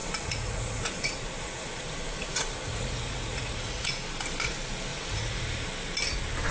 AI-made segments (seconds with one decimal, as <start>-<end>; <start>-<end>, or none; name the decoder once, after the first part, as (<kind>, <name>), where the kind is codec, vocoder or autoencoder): 0.0-3.9 (vocoder, Vocos); 4.9-5.4